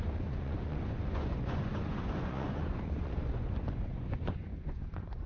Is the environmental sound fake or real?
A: fake